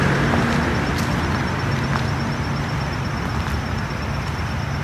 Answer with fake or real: real